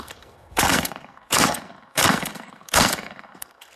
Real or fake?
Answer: fake